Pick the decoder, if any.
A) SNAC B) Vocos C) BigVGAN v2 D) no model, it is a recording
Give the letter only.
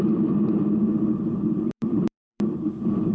C